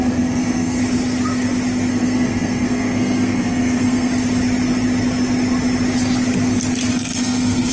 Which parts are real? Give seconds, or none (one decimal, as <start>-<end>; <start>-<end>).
0.8-1.9; 4.1-6.9